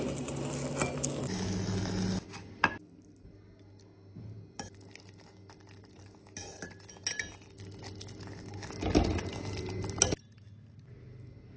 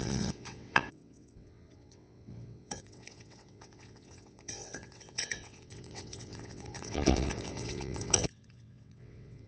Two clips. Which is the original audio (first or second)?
first